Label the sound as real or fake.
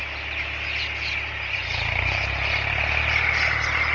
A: real